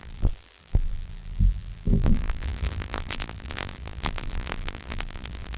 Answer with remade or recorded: remade